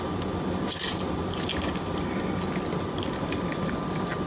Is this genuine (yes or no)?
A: yes